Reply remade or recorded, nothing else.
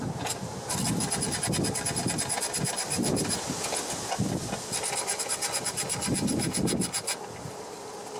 recorded